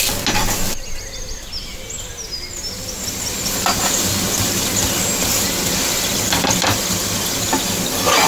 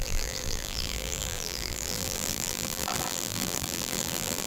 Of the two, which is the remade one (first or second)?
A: second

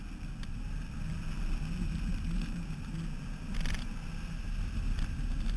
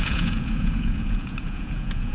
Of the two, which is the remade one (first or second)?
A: second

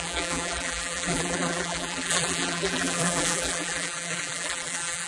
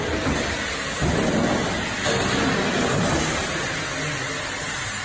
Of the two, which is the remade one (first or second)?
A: first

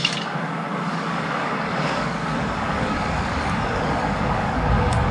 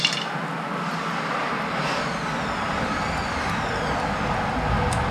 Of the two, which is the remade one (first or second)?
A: first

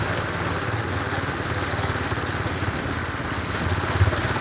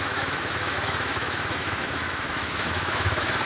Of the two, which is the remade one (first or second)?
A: second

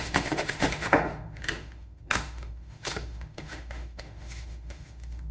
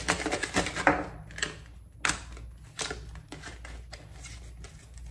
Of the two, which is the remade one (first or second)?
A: first